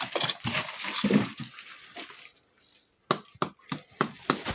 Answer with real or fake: real